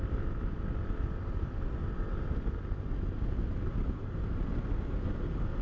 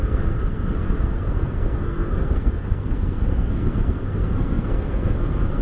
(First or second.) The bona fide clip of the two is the first